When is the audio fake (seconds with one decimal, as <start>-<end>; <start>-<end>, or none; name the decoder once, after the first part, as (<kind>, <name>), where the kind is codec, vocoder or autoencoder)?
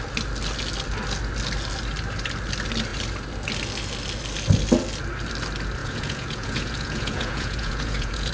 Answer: 5.8-8.3 (vocoder, Vocos)